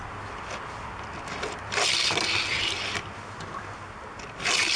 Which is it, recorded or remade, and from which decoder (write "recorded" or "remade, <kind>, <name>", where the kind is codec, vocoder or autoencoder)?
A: recorded